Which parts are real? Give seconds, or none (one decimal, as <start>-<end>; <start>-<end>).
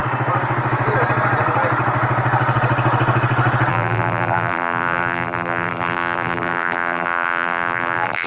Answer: 0.0-3.7